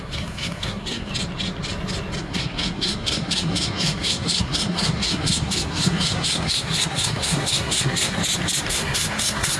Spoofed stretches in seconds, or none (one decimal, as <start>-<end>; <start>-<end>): 0.0-1.1; 2.2-8.2; 8.7-9.6